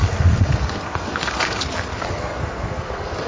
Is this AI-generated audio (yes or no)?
yes